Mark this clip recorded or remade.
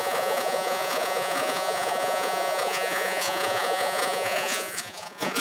remade